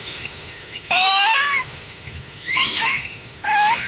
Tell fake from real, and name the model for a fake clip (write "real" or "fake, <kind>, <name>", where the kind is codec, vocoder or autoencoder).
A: fake, autoencoder, DAC-VAE